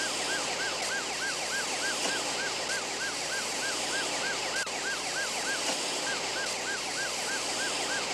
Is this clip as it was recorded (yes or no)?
yes